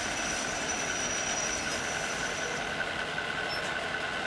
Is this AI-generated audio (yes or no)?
no